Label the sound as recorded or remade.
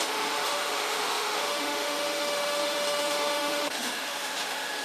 remade